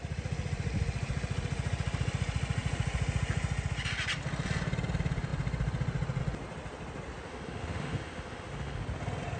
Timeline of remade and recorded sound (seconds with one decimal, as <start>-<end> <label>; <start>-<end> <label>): 0.0-7.3 recorded; 7.3-8.8 remade; 8.8-9.4 recorded